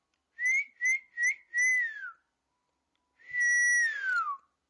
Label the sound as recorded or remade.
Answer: recorded